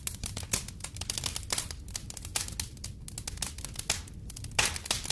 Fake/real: real